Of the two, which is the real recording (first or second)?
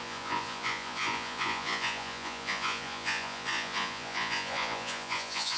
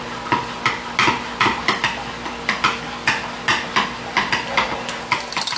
second